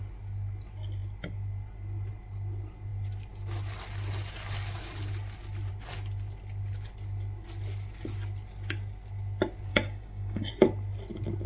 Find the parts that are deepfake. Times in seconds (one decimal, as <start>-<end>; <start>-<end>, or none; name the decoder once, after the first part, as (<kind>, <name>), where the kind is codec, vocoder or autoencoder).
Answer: 9.7-10.5 (codec, DAC)